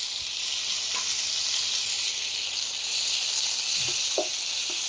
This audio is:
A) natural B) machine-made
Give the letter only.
A